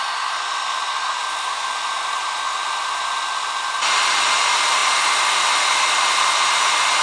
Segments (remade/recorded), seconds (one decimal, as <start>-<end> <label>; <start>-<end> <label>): 0.0-7.0 recorded